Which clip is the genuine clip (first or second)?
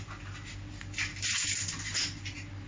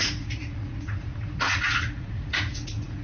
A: first